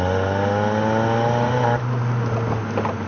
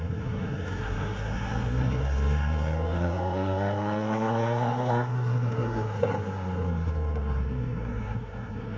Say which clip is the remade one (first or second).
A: second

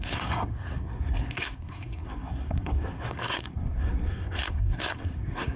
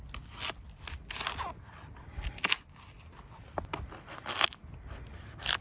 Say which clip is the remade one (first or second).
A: first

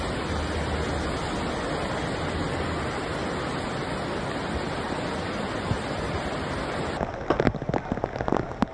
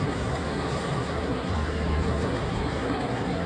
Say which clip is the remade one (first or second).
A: second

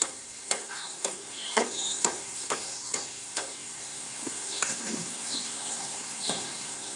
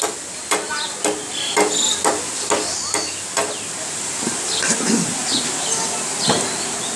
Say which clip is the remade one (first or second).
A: first